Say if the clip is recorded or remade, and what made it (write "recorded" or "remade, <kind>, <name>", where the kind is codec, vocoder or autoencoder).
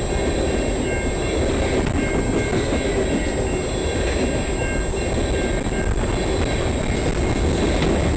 recorded